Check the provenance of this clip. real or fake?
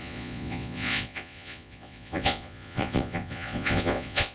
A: fake